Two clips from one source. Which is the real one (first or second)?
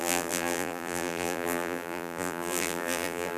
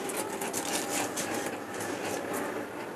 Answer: second